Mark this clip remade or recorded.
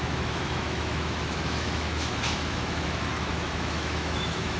remade